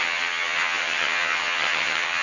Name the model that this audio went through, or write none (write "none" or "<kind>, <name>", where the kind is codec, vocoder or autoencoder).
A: vocoder, HiFi-GAN